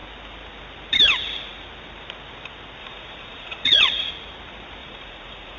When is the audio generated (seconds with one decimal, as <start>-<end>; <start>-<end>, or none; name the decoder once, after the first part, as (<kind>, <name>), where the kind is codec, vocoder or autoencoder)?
2.8-4.1 (vocoder, Vocos); 4.8-5.6